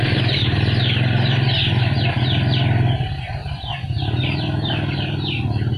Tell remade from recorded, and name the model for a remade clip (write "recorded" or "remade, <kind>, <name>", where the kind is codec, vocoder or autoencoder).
remade, vocoder, BigVGAN v2